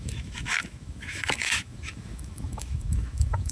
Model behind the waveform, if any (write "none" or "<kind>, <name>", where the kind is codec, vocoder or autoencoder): autoencoder, DAC-VAE